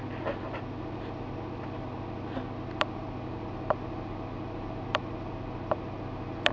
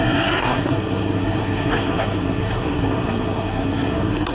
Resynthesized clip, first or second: second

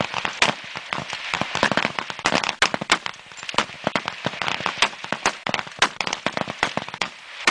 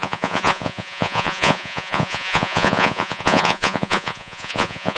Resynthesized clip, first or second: second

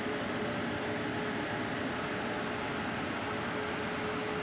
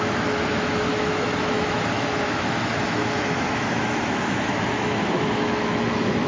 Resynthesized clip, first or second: second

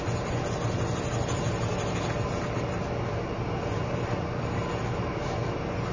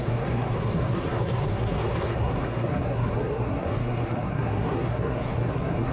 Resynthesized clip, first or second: second